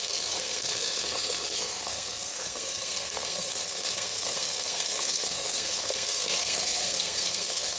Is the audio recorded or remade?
remade